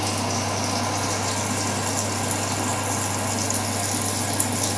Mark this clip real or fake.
real